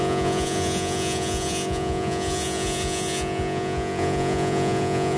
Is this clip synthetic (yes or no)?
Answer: yes